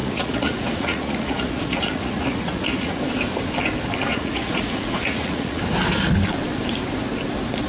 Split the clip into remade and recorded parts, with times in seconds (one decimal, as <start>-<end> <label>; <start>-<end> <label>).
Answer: 0.0-3.0 remade; 3.0-4.1 recorded; 4.1-5.6 remade; 5.6-7.7 recorded